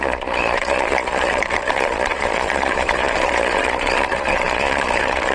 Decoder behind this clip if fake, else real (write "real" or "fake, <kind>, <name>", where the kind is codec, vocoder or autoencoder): fake, vocoder, Vocos